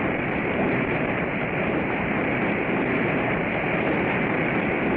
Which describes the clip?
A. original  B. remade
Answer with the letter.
B